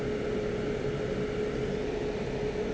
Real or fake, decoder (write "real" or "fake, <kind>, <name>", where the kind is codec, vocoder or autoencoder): real